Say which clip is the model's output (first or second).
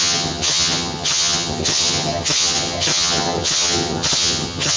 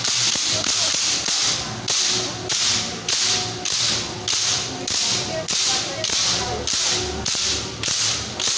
first